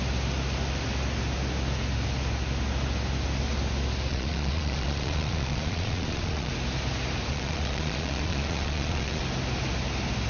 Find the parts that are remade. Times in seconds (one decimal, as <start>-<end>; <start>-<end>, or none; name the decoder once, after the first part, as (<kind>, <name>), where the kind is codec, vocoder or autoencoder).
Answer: 4.1-6.5 (vocoder, Vocos); 7.3-9.2